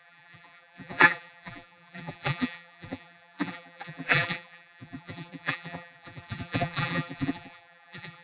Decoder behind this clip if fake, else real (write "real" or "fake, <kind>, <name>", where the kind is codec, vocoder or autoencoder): fake, vocoder, BigVGAN v2